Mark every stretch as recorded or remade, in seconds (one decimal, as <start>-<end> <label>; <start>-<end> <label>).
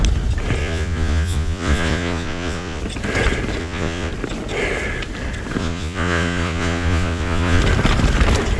0.0-0.6 recorded; 0.6-2.8 remade; 2.8-3.6 recorded; 3.6-4.1 remade; 4.1-5.6 recorded; 5.6-7.6 remade; 7.6-8.6 recorded